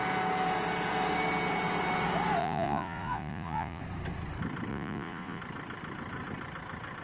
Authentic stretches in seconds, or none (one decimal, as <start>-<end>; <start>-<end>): 0.0-2.4; 3.8-4.7; 5.4-7.0